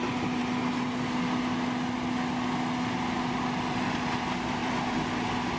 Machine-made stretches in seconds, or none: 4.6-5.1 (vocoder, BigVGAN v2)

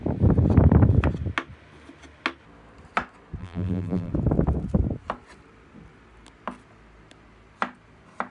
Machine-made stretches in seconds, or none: 3.4-4.1 (vocoder, BigVGAN v2)

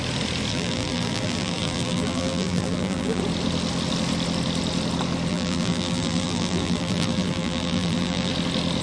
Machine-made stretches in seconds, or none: 0.5-3.2 (vocoder, BigVGAN v2); 5.3-8.3